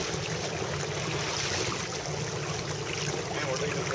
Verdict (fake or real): real